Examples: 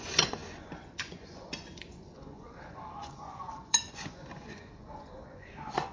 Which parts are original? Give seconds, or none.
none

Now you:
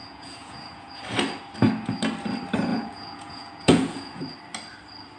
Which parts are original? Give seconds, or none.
1.0-2.7; 4.2-5.2

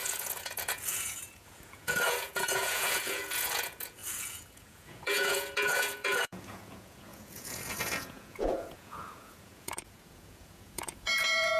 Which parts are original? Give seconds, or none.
none

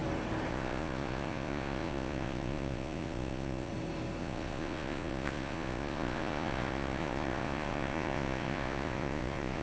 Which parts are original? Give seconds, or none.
0.0-0.5; 3.7-4.2

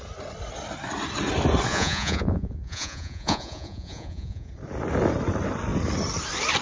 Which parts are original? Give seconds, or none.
0.0-1.7; 4.5-6.6

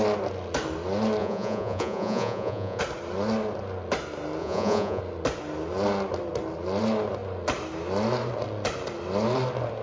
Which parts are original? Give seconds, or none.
0.0-1.2; 2.8-4.4; 5.0-9.8

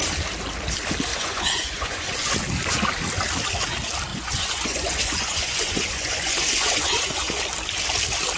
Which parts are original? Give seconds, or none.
0.0-1.1; 2.3-4.1; 7.4-8.4